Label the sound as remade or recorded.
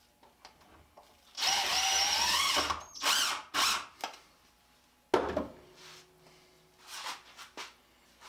recorded